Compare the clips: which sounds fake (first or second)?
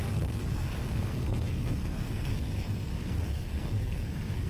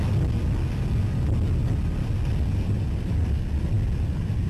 first